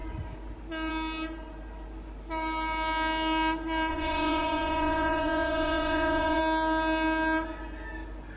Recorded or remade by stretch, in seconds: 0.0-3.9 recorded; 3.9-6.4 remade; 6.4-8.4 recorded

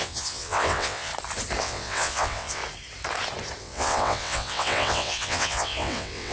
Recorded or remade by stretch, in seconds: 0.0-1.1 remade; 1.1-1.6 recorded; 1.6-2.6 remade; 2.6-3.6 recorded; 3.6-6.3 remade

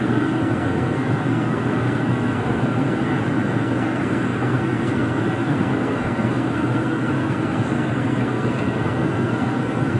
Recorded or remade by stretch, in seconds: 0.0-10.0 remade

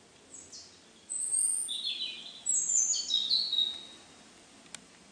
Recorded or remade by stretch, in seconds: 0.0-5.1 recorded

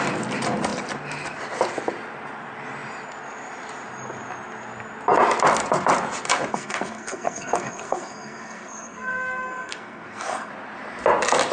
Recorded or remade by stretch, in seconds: 0.0-6.5 recorded; 6.5-10.5 remade; 10.5-11.5 recorded